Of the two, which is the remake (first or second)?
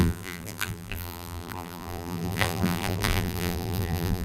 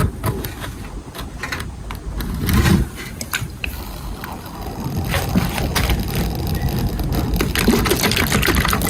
first